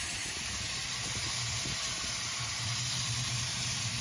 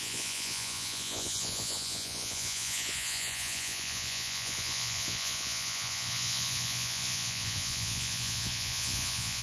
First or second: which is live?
first